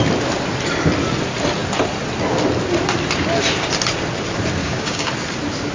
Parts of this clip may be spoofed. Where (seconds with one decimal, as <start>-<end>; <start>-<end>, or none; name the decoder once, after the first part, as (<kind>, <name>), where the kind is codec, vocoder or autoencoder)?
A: 4.6-5.1 (codec, DAC)